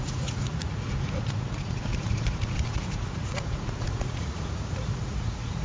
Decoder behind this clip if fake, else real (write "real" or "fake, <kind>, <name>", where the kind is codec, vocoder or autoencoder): fake, vocoder, Vocos